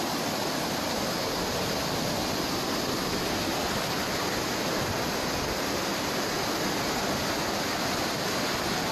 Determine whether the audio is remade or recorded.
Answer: recorded